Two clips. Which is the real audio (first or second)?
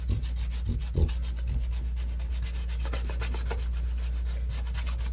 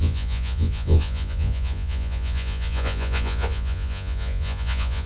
first